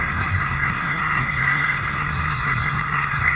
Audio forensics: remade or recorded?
remade